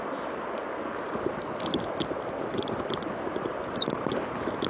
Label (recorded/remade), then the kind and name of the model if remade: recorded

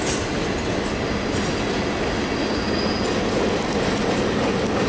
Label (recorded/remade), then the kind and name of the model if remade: recorded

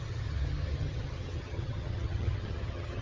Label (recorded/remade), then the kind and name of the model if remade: remade, vocoder, HiFi-GAN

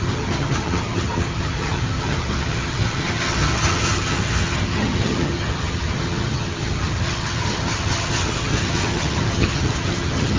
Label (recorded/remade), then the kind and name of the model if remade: remade, vocoder, HiFi-GAN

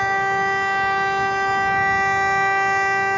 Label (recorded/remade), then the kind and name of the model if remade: recorded